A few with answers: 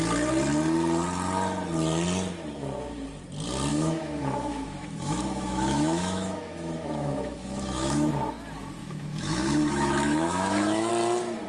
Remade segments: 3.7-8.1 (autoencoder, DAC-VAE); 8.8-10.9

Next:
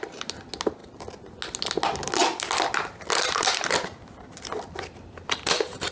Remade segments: none

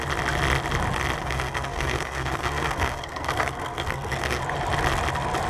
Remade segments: 1.2-4.4 (codec, SNAC)

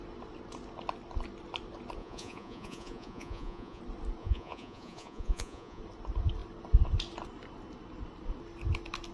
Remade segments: 2.0-3.8 (vocoder, Vocos); 4.2-5.8